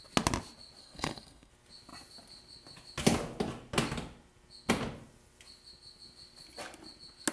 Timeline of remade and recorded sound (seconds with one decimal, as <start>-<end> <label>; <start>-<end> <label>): 0.0-0.8 recorded; 0.8-1.5 remade; 1.5-7.3 recorded